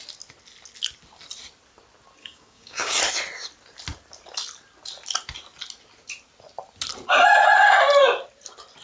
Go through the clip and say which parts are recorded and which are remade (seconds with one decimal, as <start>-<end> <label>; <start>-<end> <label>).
0.0-2.2 recorded; 2.2-3.0 remade; 3.0-8.8 recorded